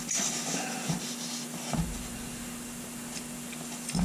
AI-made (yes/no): no